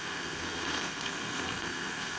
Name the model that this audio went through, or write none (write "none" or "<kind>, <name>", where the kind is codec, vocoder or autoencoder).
codec, SNAC